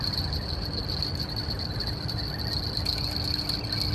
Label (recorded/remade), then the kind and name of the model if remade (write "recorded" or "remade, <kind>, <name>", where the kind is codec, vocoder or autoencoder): recorded